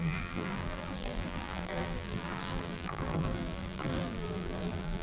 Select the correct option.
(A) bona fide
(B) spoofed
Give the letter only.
B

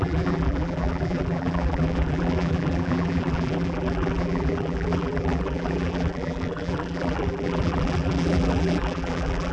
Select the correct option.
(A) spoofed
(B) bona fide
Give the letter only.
A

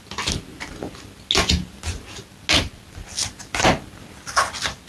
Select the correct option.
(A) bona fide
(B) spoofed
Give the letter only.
A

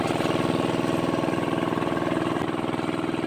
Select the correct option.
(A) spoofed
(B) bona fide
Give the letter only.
B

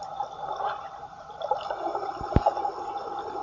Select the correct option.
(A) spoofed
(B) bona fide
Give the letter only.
B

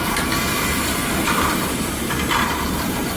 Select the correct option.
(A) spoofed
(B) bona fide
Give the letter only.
A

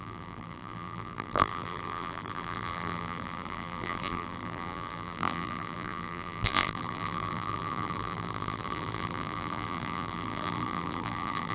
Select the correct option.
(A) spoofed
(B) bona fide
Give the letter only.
A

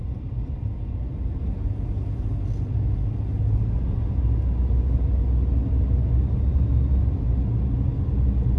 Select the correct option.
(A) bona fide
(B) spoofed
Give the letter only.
A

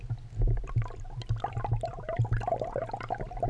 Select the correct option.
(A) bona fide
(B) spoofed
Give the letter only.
A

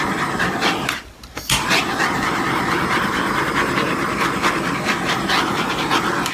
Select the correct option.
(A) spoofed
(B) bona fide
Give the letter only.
B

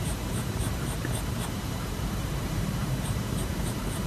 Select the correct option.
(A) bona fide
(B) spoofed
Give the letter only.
B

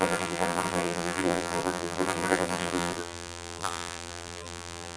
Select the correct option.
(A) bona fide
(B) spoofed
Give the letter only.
B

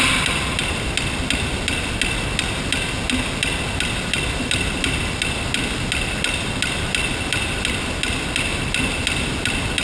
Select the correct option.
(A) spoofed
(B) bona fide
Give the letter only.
B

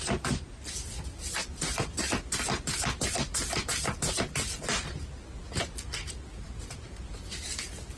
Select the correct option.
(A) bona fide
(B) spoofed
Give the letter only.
A